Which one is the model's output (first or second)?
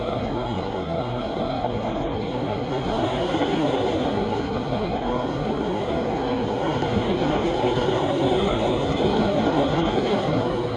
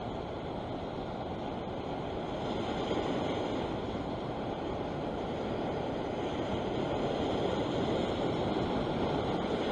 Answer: first